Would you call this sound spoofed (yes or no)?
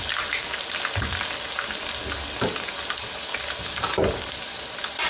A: no